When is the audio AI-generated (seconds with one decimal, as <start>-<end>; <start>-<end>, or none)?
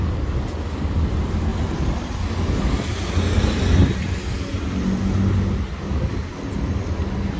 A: none